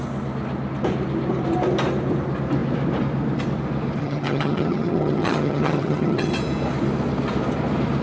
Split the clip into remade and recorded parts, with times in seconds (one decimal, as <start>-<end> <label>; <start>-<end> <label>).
0.0-4.0 recorded; 4.0-6.3 remade; 6.3-8.0 recorded